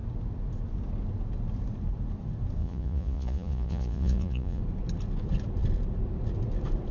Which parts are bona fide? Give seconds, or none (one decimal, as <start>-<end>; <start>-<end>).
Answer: 0.0-2.6; 4.6-6.9